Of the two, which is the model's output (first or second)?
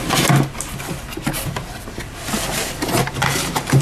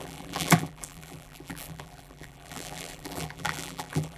second